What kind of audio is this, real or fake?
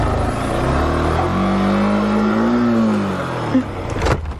real